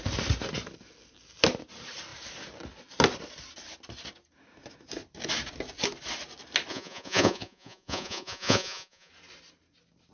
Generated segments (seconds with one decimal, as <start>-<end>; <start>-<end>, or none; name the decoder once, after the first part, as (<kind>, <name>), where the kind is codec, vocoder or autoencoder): 6.7-9.1 (vocoder, Vocos)